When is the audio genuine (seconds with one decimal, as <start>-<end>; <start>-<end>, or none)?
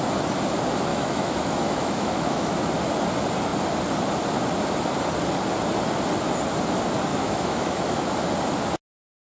0.0-0.9; 2.7-7.1; 8.1-9.2